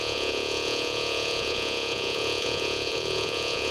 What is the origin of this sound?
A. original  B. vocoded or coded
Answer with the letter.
B